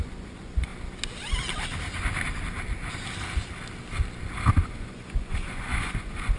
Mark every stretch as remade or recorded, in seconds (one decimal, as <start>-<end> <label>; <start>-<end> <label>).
0.0-0.7 remade; 0.7-4.5 recorded; 4.5-6.4 remade